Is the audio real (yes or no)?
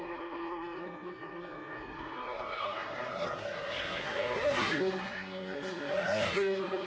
no